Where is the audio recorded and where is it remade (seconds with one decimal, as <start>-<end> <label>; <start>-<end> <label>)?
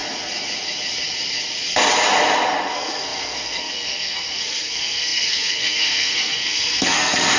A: 0.0-2.7 recorded; 2.7-7.4 remade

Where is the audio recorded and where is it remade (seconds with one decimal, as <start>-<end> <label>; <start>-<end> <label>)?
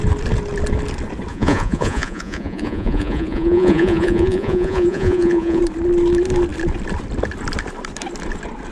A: 0.0-1.3 recorded; 1.3-5.6 remade; 5.6-8.7 recorded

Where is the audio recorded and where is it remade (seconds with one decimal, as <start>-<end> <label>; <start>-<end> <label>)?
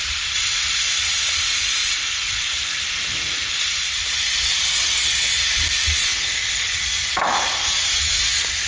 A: 0.0-8.7 recorded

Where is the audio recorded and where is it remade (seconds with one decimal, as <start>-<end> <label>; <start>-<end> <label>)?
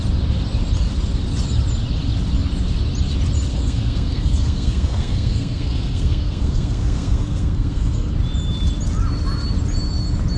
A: 0.0-3.5 recorded; 3.5-8.1 remade; 8.1-10.4 recorded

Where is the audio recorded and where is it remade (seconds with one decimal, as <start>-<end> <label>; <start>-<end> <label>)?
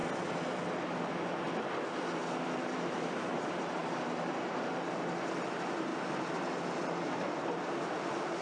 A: 0.0-2.9 recorded; 2.9-5.9 remade; 5.9-8.4 recorded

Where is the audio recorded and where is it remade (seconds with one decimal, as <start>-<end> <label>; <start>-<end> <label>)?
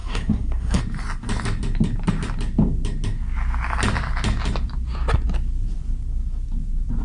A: 0.0-0.8 remade; 0.8-7.0 recorded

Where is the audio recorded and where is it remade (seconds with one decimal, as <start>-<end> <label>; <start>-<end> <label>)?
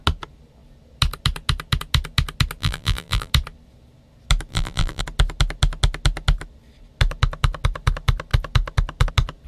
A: 0.0-2.6 recorded; 2.6-3.3 remade; 3.3-4.5 recorded; 4.5-5.0 remade; 5.0-9.5 recorded